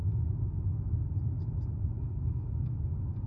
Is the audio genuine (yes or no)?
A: yes